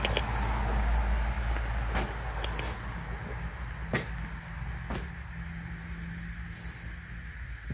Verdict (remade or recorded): recorded